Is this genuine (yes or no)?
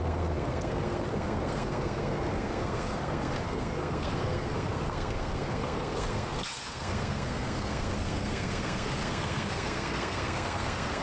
no